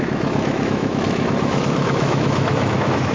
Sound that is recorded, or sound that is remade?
remade